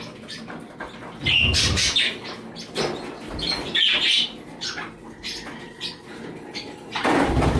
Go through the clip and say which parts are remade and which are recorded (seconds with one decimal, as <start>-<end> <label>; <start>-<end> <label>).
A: 0.0-7.6 recorded

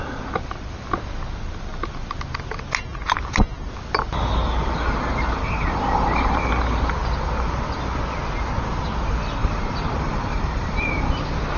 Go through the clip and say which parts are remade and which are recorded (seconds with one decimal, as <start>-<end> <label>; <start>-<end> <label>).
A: 0.0-4.4 recorded; 4.4-6.4 remade; 6.4-9.4 recorded; 9.4-11.1 remade; 11.1-11.6 recorded

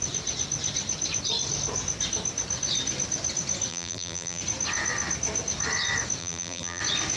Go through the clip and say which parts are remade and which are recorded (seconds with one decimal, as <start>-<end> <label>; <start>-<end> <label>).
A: 0.0-3.7 recorded; 3.7-4.4 remade; 4.4-6.2 recorded; 6.2-6.8 remade; 6.8-7.2 recorded